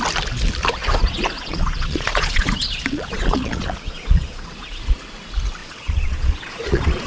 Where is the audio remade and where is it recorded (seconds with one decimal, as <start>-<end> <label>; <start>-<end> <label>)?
0.0-0.8 recorded; 0.8-4.9 remade; 4.9-5.6 recorded; 5.6-7.1 remade